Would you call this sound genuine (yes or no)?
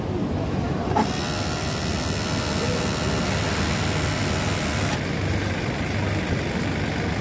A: yes